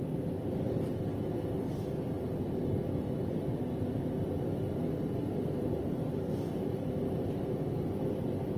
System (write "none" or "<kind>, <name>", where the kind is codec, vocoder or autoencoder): none